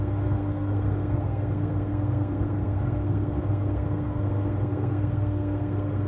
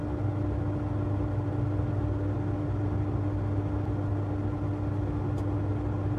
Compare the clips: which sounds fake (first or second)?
first